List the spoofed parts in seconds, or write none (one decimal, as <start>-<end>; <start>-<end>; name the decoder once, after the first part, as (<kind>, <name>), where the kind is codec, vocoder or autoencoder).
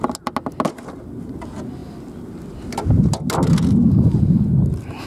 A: none